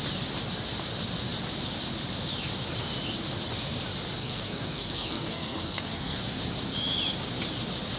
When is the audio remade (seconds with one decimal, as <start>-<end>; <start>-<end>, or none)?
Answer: 4.2-6.2